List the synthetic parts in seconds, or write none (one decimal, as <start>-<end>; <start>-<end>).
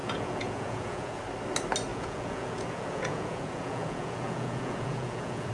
0.0-1.2; 1.9-5.5